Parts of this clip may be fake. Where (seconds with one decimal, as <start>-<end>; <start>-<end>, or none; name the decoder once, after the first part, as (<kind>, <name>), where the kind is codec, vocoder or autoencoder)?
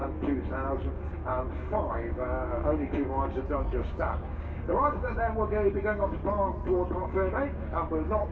0.9-1.3 (codec, DAC); 1.9-6.2; 7.0-8.3